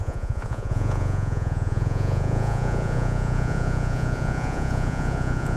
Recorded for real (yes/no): no